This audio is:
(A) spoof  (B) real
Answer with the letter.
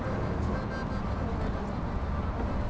B